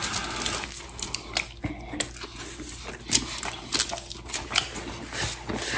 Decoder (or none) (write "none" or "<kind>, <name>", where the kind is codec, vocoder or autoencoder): none